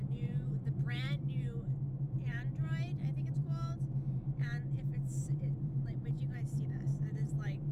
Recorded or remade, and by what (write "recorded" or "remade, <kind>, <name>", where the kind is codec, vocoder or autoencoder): remade, vocoder, BigVGAN v2